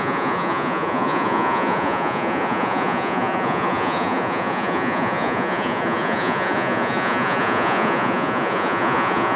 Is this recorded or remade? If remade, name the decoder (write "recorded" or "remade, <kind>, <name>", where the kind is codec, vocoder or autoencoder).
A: remade, vocoder, Vocos